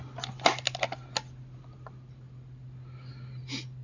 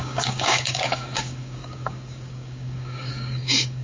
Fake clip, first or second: second